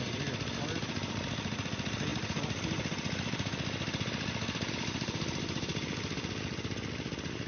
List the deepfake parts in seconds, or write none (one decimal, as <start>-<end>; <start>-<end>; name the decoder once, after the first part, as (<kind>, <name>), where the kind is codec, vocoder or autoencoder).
none